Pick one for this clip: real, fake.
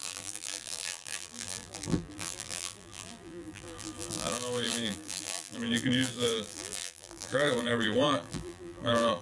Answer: fake